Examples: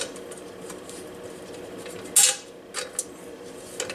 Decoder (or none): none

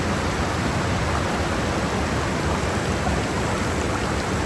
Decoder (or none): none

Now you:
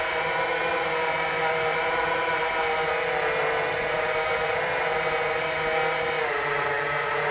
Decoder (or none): vocoder, BigVGAN v2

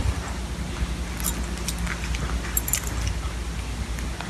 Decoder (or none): none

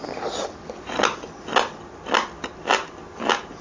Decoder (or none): none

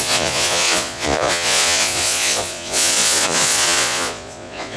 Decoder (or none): vocoder, Vocos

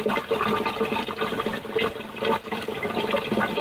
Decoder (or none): none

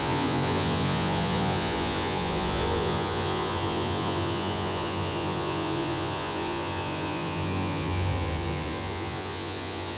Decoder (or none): vocoder, Vocos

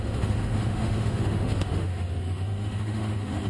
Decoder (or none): autoencoder, DAC-VAE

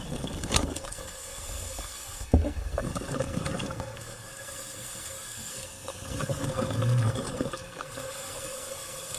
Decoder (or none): codec, SNAC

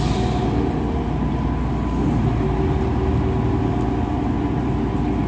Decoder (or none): none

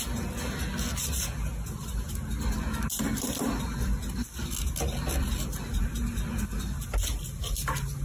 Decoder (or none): none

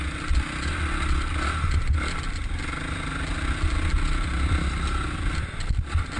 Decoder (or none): none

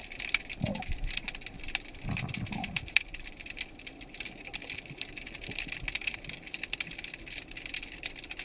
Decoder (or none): vocoder, BigVGAN v2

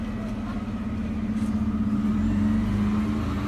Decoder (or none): none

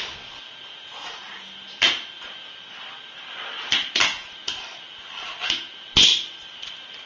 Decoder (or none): none